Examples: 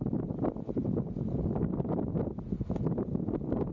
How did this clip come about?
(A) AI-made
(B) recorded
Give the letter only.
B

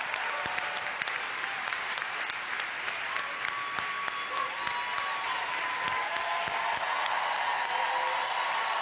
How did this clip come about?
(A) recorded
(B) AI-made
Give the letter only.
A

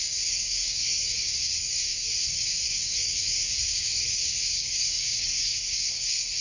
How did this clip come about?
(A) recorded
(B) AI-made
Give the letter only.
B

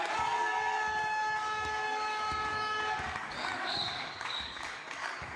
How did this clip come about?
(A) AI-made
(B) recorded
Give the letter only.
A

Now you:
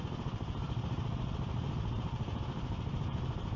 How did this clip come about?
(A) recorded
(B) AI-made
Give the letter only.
A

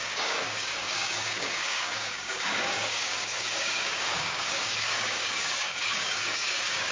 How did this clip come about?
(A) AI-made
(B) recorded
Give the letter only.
A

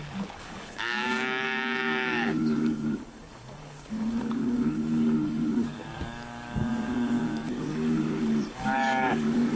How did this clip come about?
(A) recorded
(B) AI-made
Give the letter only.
B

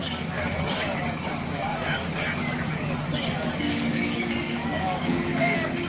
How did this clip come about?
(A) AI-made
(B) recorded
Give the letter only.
A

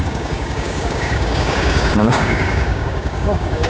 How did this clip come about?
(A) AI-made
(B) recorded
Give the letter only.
A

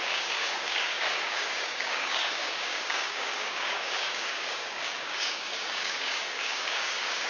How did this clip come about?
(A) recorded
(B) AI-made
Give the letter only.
B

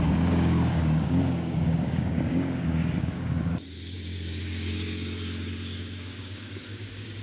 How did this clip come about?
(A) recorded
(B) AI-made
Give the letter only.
B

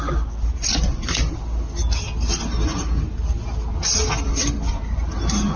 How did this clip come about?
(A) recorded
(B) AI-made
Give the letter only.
A